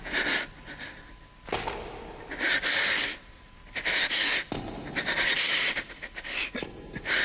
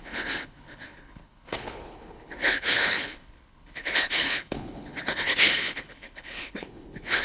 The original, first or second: first